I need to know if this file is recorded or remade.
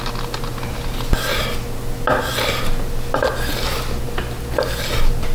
recorded